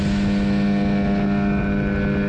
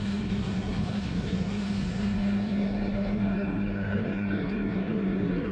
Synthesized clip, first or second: second